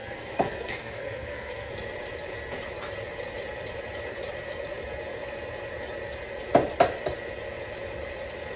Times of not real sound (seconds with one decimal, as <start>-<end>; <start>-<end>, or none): 0.0-1.7